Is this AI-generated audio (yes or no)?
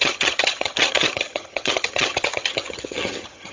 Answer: yes